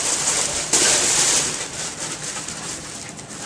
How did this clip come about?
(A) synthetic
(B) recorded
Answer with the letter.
B